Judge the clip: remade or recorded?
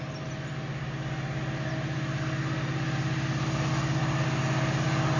recorded